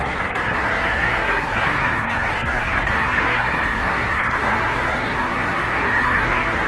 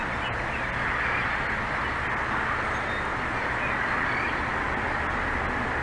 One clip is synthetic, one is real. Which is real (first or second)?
second